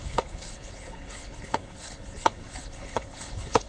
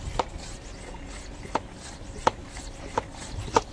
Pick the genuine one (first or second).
second